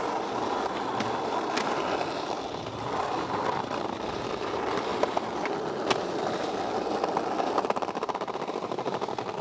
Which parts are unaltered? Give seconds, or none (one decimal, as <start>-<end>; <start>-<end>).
0.0-9.4